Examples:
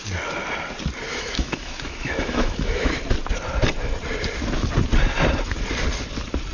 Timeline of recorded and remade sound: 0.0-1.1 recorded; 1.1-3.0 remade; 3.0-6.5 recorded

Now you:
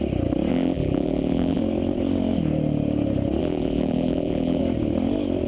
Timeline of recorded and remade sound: 0.0-0.5 recorded; 0.5-1.6 remade; 1.6-3.4 recorded; 3.4-4.6 remade; 4.6-5.5 recorded

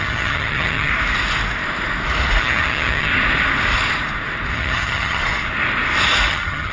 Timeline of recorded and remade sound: 0.0-0.9 remade; 0.9-2.4 recorded; 2.4-3.1 remade; 3.1-4.5 recorded; 4.5-5.2 remade; 5.2-6.3 recorded; 6.3-6.7 remade

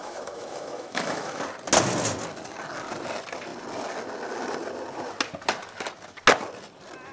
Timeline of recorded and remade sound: 0.0-1.4 remade; 1.4-7.1 recorded

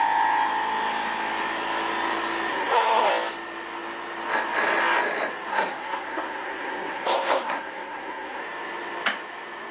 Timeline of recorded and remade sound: 0.0-2.5 recorded; 2.5-3.1 remade; 3.1-5.5 recorded; 5.5-8.4 remade; 8.4-9.7 recorded